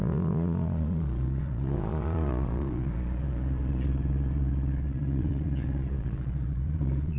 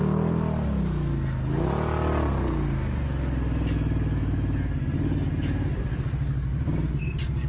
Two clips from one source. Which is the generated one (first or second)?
first